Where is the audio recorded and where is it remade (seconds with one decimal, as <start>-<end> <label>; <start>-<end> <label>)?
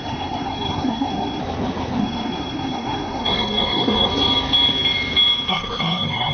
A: 0.0-1.4 remade; 1.4-2.0 recorded; 2.0-4.1 remade; 4.1-5.5 recorded; 5.5-6.3 remade